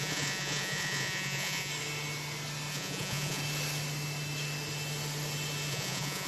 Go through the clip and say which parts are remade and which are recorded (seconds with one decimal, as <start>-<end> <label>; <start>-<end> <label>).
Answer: 0.0-1.7 remade; 1.7-2.7 recorded; 2.7-3.4 remade; 3.4-5.7 recorded; 5.7-6.3 remade